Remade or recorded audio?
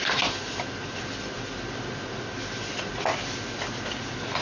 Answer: recorded